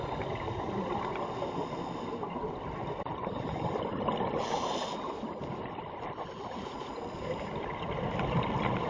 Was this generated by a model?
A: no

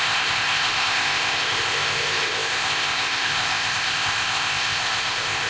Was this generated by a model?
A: yes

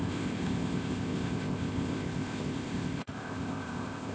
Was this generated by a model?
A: yes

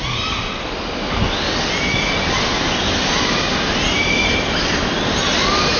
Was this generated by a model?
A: no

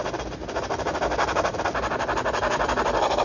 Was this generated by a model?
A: no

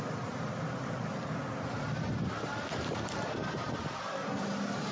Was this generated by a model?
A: no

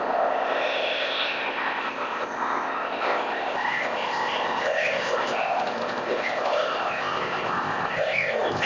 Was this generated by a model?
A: yes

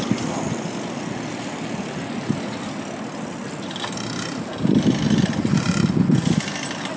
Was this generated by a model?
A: no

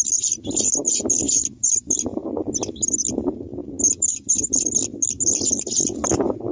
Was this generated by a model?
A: no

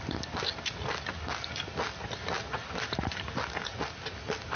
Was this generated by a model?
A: no